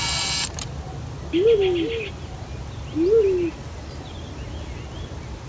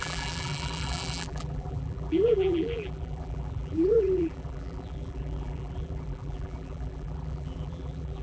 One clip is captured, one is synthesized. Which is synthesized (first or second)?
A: second